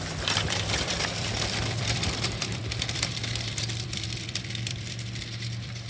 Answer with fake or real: fake